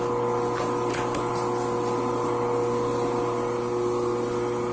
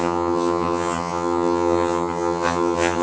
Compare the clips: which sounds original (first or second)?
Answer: first